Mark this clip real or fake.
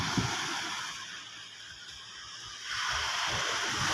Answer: real